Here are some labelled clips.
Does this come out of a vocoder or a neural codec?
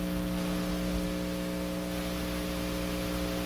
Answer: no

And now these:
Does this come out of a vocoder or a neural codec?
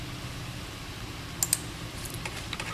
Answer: no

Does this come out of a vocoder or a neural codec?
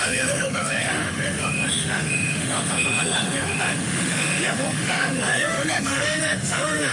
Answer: yes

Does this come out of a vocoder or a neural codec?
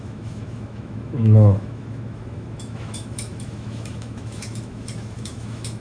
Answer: yes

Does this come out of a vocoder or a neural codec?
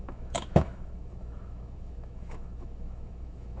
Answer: yes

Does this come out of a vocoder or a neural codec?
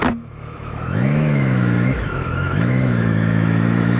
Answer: yes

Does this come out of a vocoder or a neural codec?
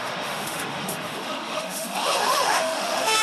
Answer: yes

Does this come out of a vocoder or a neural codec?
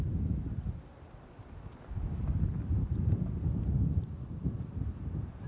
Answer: no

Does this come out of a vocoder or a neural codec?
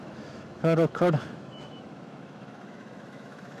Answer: yes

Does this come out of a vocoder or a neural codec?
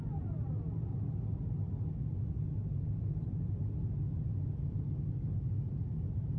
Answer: no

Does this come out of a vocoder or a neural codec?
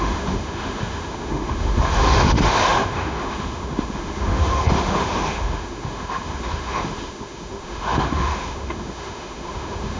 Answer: yes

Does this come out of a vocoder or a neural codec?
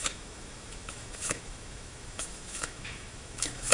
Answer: yes